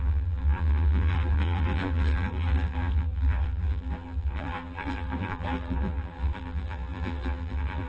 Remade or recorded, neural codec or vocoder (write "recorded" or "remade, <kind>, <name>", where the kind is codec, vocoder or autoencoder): remade, vocoder, BigVGAN v2